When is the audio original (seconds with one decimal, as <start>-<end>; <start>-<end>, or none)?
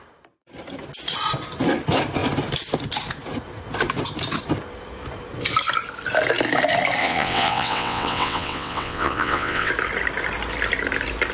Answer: 0.0-7.0; 9.7-11.3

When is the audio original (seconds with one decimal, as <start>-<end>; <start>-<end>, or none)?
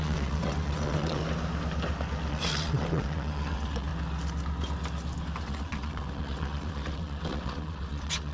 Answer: 1.2-2.3; 3.9-5.4